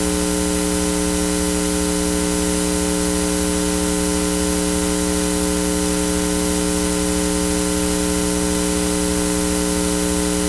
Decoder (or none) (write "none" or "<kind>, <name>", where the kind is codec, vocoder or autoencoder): none